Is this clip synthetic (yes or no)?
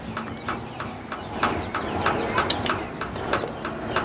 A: no